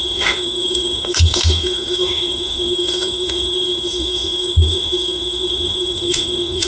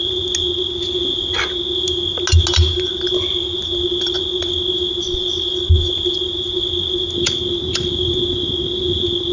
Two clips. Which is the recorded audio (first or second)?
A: second